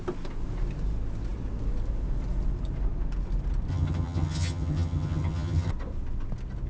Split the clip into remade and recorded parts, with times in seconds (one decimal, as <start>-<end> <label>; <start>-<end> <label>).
0.0-3.7 recorded; 3.7-5.7 remade; 5.7-6.7 recorded